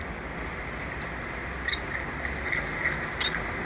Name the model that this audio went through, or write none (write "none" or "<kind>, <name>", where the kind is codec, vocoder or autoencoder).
none